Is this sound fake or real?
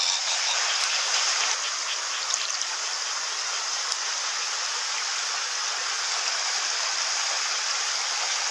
real